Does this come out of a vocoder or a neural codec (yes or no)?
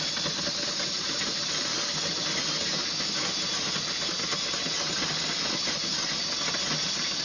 no